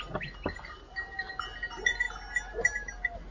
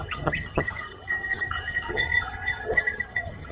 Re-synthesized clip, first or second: second